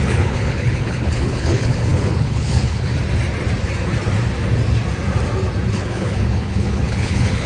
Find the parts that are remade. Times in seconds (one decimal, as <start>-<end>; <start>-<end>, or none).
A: 0.0-2.9; 5.7-7.5